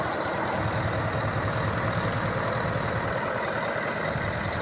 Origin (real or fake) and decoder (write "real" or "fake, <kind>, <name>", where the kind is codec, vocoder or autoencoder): real